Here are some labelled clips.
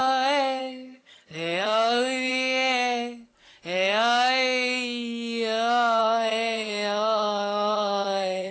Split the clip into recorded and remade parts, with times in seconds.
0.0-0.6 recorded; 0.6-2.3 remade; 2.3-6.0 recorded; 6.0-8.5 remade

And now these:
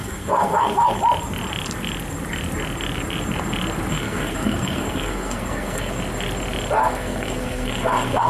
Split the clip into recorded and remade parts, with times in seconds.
0.0-1.0 remade; 1.0-3.9 recorded; 3.9-6.0 remade; 6.0-6.8 recorded; 6.8-8.3 remade

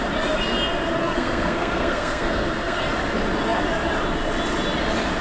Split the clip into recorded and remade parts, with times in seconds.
0.0-1.0 recorded; 1.0-2.8 remade; 2.8-5.2 recorded